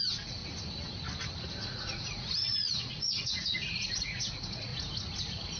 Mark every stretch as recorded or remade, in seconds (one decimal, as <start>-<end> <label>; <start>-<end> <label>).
0.0-0.4 remade; 0.4-1.6 recorded; 1.6-4.7 remade; 4.7-5.6 recorded